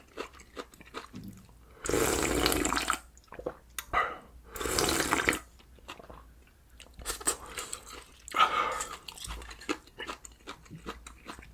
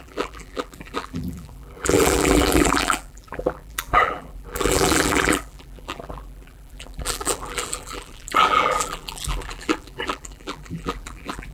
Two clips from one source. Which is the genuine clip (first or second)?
first